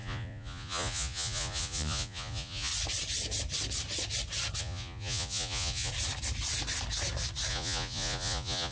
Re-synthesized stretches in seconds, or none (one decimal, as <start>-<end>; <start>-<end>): 0.0-2.7; 4.6-5.9; 7.5-8.7